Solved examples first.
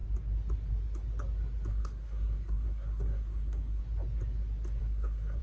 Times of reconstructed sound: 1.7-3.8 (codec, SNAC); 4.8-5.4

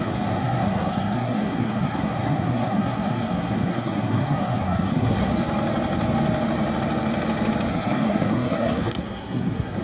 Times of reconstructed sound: 0.0-5.3 (codec, SNAC); 7.7-9.8

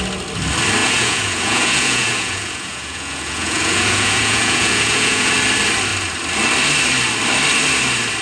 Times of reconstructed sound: 0.8-5.3 (vocoder, Vocos)

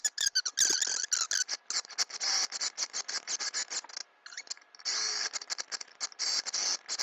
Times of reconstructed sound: 4.0-4.5 (vocoder, BigVGAN v2)

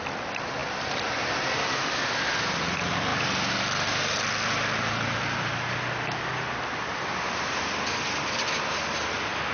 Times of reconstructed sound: none

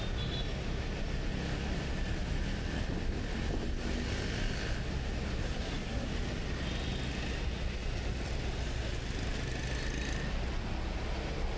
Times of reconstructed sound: 5.4-6.1 (codec, SNAC)

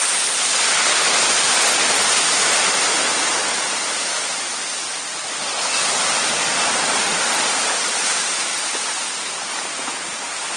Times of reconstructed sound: 7.0-7.5 (autoencoder, DAC-VAE)